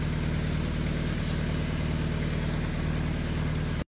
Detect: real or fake real